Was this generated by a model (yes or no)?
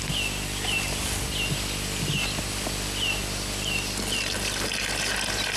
no